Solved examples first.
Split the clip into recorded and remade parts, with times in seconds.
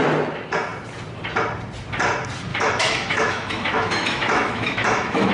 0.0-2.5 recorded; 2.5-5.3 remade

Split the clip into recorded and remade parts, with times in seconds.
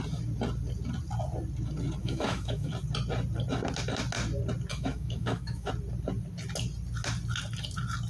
0.0-2.0 recorded; 2.0-2.7 remade; 2.7-4.7 recorded; 4.7-5.7 remade; 5.7-8.1 recorded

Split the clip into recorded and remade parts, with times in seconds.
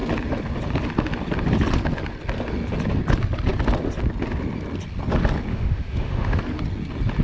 0.0-5.5 recorded; 5.5-6.4 remade; 6.4-7.2 recorded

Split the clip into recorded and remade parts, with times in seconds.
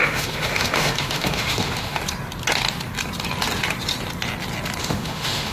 0.0-2.0 remade; 2.0-4.8 recorded; 4.8-5.5 remade